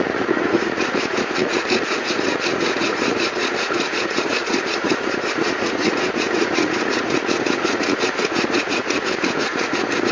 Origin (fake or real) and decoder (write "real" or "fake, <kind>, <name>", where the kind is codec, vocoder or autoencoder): fake, vocoder, Vocos